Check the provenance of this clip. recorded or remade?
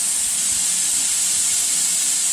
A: recorded